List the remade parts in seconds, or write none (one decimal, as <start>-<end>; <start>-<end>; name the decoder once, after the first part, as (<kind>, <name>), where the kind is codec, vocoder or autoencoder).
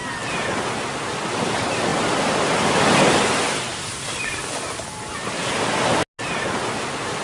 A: none